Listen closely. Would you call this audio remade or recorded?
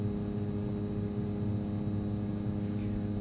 recorded